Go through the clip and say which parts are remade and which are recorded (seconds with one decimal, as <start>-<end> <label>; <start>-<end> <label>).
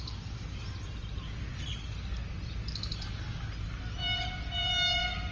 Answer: 0.0-5.3 recorded